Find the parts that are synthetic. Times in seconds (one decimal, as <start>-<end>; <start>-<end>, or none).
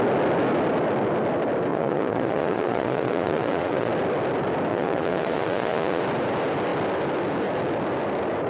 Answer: 1.7-3.9; 4.7-6.0